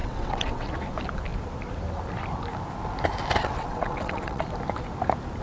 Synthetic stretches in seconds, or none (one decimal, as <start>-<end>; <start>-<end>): 0.0-0.7; 3.4-4.4

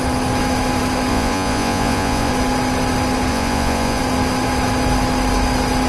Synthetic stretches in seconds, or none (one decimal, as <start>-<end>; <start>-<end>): 1.1-2.3; 3.3-4.0